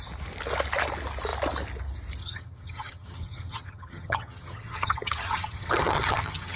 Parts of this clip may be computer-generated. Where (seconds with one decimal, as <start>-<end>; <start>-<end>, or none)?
2.2-6.6